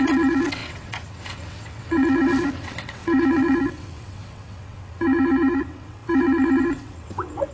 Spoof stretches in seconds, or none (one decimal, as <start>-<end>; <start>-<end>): 0.0-7.5